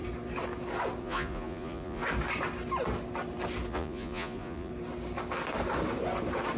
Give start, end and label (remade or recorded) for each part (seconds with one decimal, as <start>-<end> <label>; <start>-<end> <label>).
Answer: 0.0-1.0 recorded; 1.0-2.0 remade; 2.0-3.7 recorded; 3.7-4.7 remade; 4.7-6.6 recorded